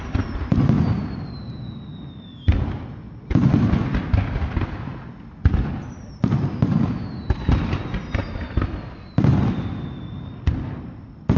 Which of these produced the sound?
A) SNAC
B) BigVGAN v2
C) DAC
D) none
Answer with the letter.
D